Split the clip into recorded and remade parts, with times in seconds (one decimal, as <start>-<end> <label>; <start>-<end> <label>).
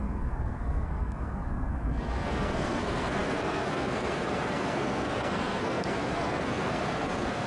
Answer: 0.0-7.5 remade